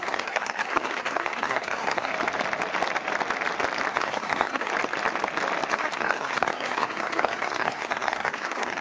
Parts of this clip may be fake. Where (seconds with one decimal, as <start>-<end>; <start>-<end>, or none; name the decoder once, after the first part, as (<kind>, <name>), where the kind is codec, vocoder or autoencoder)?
0.0-2.1 (codec, SNAC); 3.9-4.7; 5.7-8.8